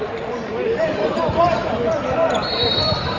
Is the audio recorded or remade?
remade